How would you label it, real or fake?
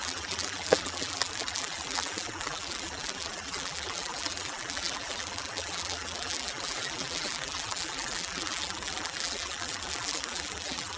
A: fake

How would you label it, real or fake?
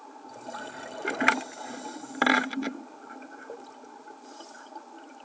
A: fake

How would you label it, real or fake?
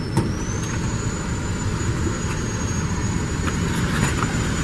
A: real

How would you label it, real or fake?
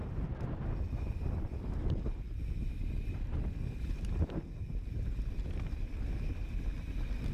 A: real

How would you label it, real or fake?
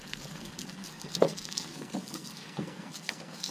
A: fake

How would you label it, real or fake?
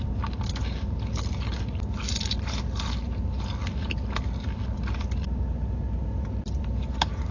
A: real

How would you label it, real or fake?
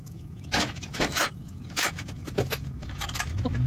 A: fake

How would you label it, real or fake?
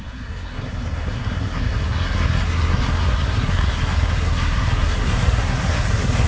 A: fake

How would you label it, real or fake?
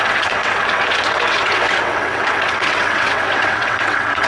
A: fake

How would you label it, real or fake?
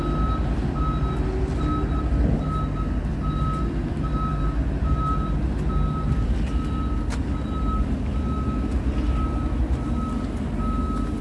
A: real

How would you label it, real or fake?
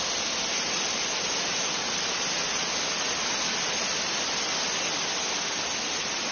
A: real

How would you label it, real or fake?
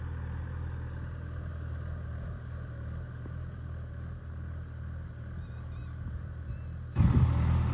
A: real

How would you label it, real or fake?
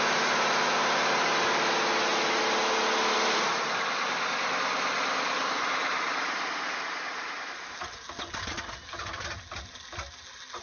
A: real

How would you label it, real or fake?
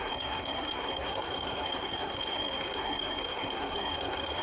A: fake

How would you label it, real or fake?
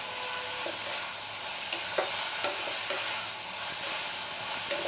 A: real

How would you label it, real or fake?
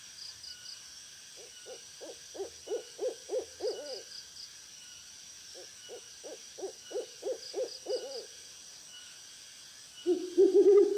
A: real